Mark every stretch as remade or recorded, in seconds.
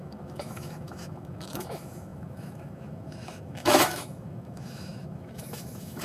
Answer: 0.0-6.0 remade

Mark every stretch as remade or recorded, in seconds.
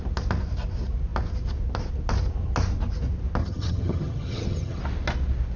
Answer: 0.0-3.4 recorded; 3.4-4.8 remade; 4.8-5.6 recorded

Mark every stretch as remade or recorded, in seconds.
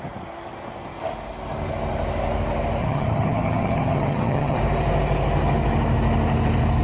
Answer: 0.0-2.8 recorded; 2.8-4.6 remade; 4.6-6.8 recorded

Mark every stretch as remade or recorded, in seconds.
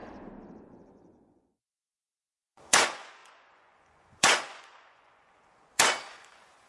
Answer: 0.0-0.6 recorded; 0.6-6.7 remade